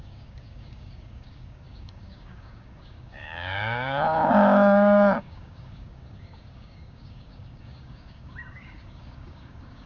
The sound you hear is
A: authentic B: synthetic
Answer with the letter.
B